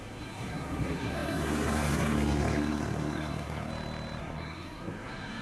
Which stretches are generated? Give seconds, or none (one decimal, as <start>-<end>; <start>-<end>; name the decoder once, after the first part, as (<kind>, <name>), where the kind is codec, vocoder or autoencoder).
0.0-3.7 (codec, SNAC); 4.2-5.4